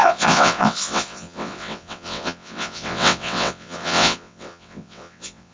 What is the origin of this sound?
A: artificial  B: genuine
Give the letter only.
A